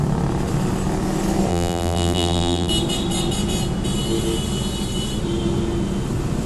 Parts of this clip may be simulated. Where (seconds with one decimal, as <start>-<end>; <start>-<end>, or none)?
1.5-2.7